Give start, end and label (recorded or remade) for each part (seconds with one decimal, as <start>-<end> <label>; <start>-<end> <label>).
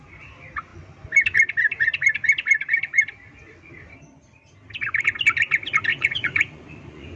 0.0-5.9 recorded; 5.9-7.2 remade